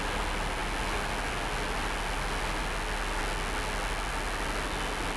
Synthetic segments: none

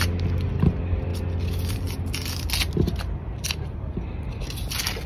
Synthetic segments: none

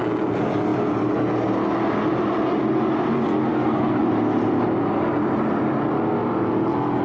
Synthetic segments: 3.5-4.0 (codec, SNAC)